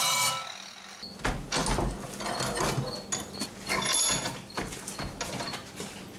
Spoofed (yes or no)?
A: no